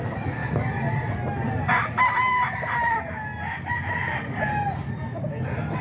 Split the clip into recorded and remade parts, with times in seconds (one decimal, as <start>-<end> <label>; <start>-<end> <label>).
0.0-5.8 recorded

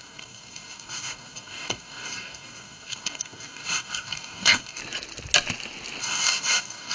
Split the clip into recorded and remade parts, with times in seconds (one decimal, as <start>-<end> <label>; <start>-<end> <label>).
0.0-4.8 remade; 4.8-6.0 recorded; 6.0-6.9 remade

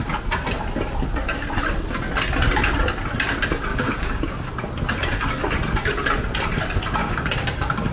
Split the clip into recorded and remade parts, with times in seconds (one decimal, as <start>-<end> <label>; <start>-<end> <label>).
0.0-3.7 recorded; 3.7-4.5 remade; 4.5-7.0 recorded; 7.0-7.9 remade

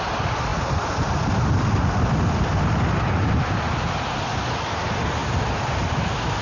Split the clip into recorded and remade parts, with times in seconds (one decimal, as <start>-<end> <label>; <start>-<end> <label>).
0.0-6.4 recorded

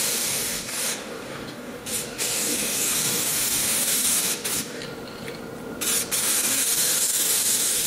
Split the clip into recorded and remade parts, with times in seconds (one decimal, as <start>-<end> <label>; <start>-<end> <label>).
0.0-4.8 remade; 4.8-6.2 recorded; 6.2-7.9 remade

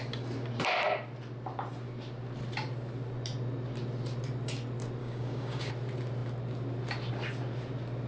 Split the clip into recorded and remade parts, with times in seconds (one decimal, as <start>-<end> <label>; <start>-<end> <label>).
0.0-5.0 recorded; 5.0-5.7 remade; 5.7-8.1 recorded

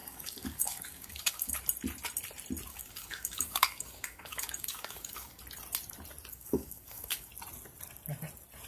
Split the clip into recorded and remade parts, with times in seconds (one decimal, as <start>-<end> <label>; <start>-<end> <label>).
0.0-1.6 remade; 1.6-2.7 recorded; 2.7-5.4 remade; 5.4-6.3 recorded; 6.3-7.3 remade; 7.3-8.7 recorded

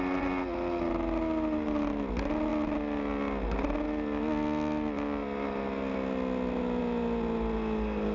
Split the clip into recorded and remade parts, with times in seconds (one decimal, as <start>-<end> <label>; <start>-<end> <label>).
0.0-8.1 recorded